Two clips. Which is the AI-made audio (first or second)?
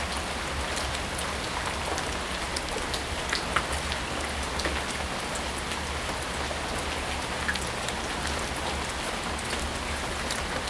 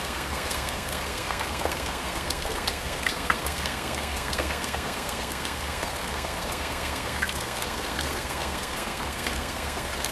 second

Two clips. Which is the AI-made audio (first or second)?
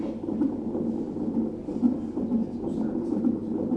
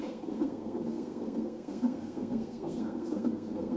second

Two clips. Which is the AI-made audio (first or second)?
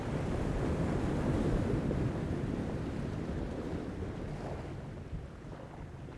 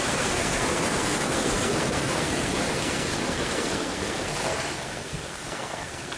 second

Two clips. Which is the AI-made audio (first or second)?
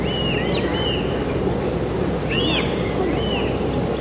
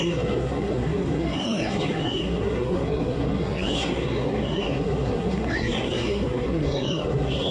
second